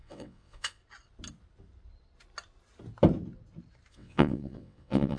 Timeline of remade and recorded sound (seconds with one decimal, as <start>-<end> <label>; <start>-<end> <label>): 0.0-0.8 remade; 0.8-3.9 recorded; 3.9-5.2 remade